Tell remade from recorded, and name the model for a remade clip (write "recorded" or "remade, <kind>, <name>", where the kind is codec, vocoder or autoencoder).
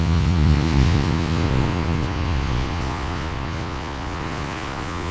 remade, vocoder, Vocos